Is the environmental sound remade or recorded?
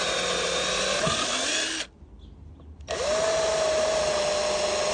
recorded